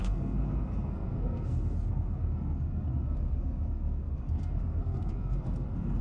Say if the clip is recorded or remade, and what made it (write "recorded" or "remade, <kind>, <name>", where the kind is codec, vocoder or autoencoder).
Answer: remade, codec, SNAC